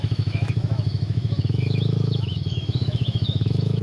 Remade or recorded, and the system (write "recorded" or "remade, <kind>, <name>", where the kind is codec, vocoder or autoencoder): remade, autoencoder, DAC-VAE